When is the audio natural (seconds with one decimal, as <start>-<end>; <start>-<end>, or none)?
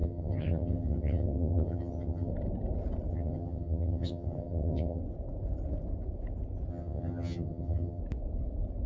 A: 2.3-3.1; 5.0-6.7; 8.0-8.9